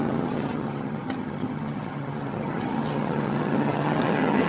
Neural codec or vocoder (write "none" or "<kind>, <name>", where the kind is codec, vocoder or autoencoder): vocoder, HiFi-GAN